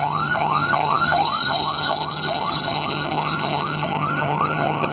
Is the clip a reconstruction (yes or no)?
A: yes